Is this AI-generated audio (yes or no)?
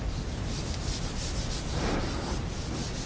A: no